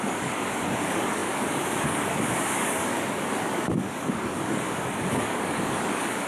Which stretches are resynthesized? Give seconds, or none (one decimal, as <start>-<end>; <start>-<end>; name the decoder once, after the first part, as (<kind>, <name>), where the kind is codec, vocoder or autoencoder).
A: 0.0-6.3 (codec, DAC)